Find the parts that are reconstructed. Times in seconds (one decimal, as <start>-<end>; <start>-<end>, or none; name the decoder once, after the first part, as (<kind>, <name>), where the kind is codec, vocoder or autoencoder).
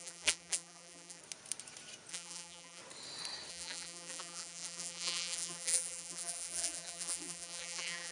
0.0-1.2 (vocoder, BigVGAN v2); 2.1-2.8; 3.5-8.1